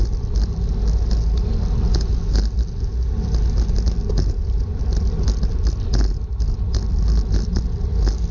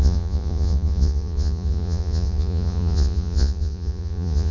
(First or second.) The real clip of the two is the first